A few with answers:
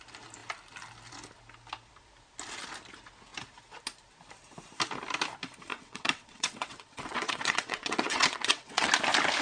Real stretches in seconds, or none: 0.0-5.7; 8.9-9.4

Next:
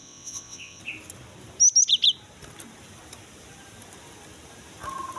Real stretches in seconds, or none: 0.8-5.2

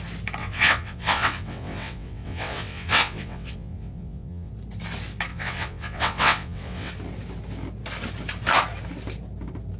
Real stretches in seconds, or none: 0.0-0.4; 4.5-5.3; 6.9-9.8

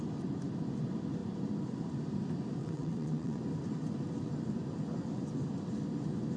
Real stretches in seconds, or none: 0.0-2.6; 3.4-6.4